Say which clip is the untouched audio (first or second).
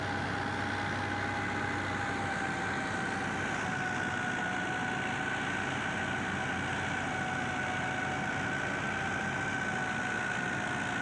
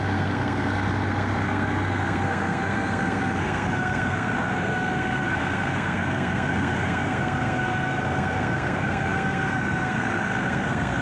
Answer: first